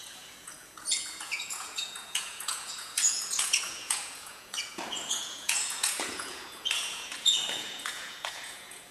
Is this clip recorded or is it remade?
remade